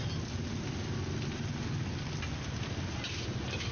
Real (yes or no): yes